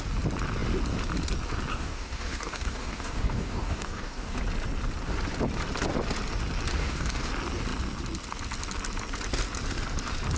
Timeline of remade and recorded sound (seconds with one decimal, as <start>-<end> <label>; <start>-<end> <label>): 0.0-1.7 recorded; 1.7-4.4 remade; 4.4-6.8 recorded; 6.8-7.3 remade; 7.3-10.4 recorded